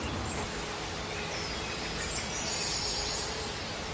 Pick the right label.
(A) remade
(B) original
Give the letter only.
B